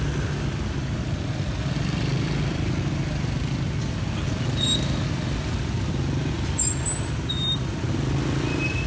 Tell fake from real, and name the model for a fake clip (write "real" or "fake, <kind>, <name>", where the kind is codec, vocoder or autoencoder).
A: real